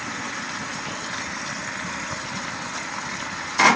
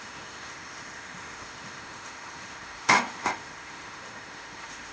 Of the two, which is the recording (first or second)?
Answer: first